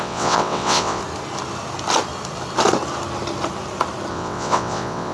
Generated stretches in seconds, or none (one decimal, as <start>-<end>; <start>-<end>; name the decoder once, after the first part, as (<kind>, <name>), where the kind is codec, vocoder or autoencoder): 0.0-1.0 (vocoder, WaveNeXt); 4.1-5.1